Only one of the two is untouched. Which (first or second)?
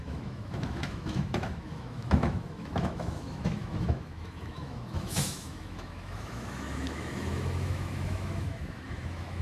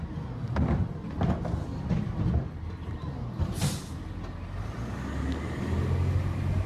second